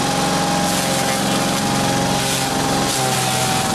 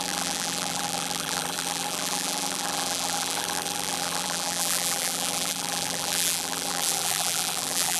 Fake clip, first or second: second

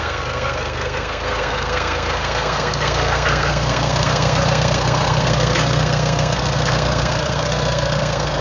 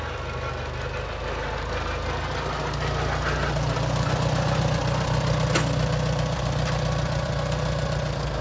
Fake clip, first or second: first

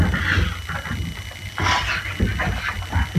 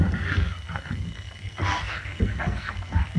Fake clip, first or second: second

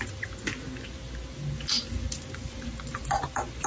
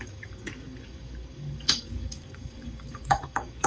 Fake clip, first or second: second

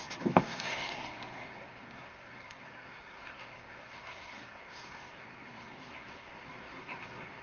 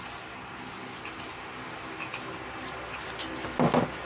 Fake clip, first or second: first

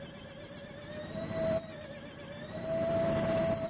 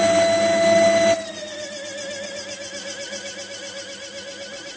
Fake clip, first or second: first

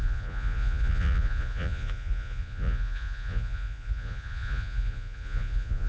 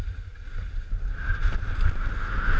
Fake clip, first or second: first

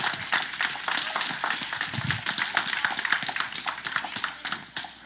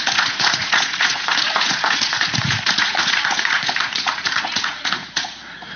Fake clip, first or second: second